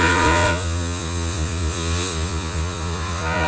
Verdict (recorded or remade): remade